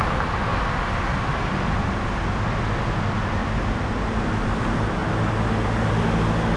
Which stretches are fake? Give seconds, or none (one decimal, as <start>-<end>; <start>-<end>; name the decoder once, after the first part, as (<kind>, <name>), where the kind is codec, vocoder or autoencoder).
none